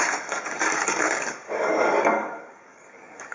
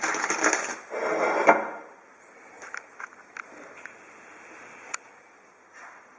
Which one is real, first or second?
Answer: second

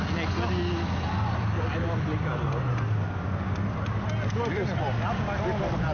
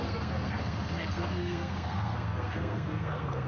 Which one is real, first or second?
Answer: first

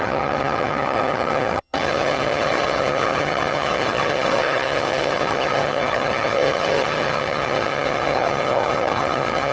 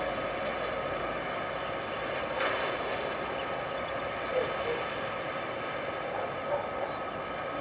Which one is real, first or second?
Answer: second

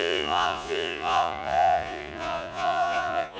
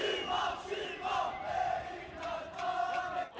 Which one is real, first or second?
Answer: second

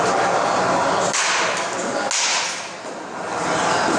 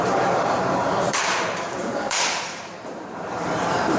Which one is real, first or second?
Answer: first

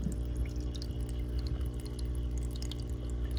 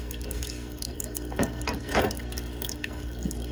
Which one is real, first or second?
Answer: first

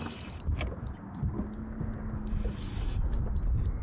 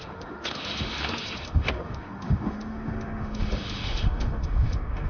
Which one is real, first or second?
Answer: first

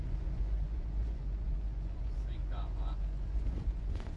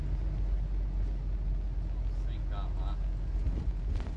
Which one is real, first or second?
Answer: second